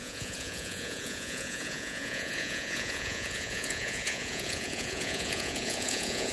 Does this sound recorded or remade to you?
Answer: remade